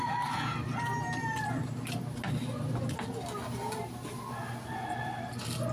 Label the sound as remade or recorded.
recorded